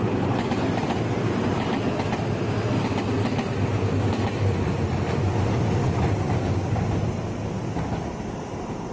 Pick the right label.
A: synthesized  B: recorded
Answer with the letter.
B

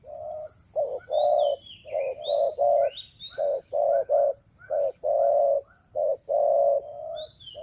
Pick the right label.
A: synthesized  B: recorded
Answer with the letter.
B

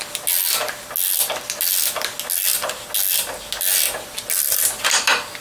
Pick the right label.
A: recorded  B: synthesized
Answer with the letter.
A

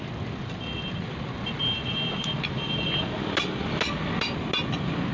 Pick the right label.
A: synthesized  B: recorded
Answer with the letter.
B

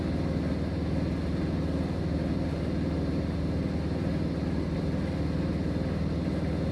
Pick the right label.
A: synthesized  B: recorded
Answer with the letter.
B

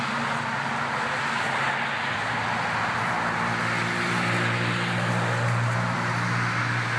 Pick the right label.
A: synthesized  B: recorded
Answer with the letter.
B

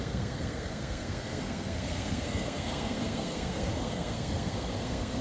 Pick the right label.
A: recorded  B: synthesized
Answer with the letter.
B